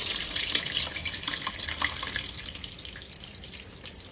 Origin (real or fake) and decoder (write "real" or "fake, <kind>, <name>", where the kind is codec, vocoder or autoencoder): real